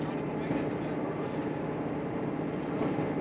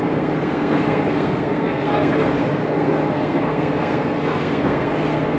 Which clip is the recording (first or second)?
first